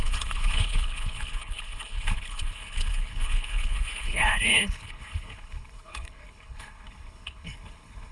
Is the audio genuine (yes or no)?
no